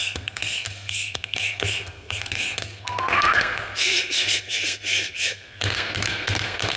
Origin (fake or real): fake